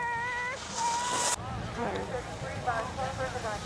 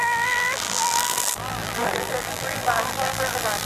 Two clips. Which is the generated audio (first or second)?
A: second